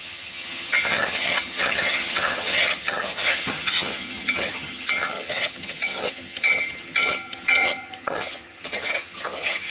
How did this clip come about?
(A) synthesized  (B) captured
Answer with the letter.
A